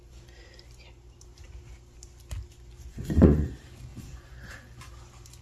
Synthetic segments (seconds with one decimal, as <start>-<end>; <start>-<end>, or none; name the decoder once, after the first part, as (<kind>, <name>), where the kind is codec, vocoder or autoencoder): 2.9-3.5 (vocoder, Vocos); 3.9-4.9